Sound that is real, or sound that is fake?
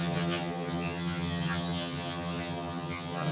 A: fake